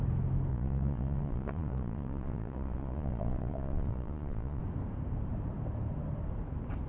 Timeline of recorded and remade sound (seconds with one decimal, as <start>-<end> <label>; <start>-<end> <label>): 0.0-0.5 recorded; 0.5-4.6 remade; 4.6-6.9 recorded